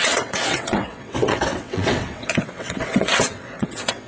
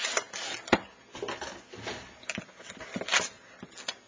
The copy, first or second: first